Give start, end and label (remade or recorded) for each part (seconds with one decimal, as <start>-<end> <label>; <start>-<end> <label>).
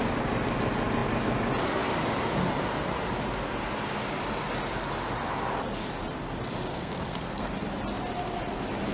0.0-6.7 recorded; 6.7-7.5 remade; 7.5-8.9 recorded